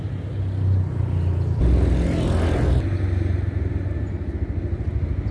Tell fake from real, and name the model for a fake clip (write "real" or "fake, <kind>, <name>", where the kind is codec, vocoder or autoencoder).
real